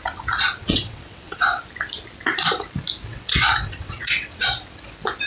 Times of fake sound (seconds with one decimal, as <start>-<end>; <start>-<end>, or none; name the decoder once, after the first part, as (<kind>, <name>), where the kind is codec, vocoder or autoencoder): 0.6-1.6 (vocoder, WaveNeXt); 3.1-4.6